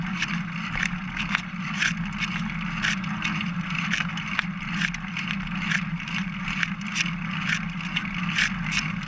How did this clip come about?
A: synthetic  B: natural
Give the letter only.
B